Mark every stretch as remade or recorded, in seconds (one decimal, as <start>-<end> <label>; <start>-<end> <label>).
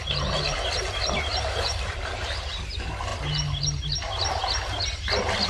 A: 0.0-1.3 recorded; 1.3-2.6 remade; 2.6-5.5 recorded